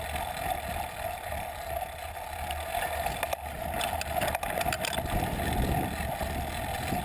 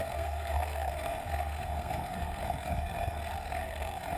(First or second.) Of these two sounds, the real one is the first